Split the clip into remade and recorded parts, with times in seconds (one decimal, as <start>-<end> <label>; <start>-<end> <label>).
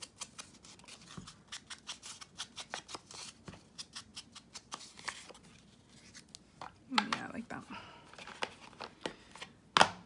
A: 0.0-10.1 recorded